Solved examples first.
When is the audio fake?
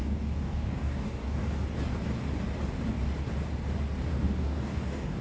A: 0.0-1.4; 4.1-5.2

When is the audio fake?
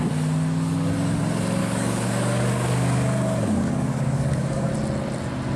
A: 1.6-4.7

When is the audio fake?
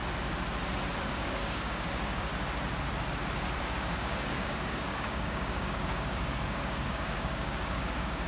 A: 1.0-2.3; 3.6-8.3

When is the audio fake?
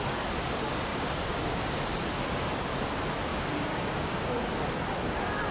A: 0.9-1.8; 3.3-4.4